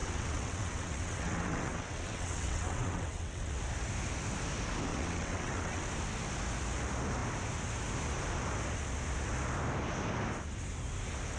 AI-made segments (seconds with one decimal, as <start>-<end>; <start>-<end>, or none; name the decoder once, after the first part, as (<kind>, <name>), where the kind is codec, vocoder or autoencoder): 0.0-3.6 (vocoder, WaveNeXt); 4.9-5.9